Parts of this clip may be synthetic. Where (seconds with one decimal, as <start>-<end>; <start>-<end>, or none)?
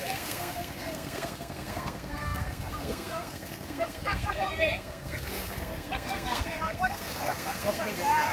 0.0-8.3